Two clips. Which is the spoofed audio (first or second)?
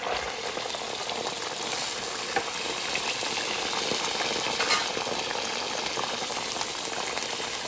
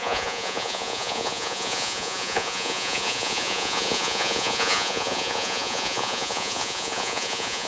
second